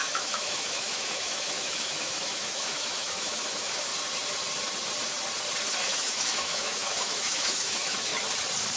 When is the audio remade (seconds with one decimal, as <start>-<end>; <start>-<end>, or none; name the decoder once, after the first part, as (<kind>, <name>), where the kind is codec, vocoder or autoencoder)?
0.0-3.9 (autoencoder, DAC-VAE); 5.8-8.1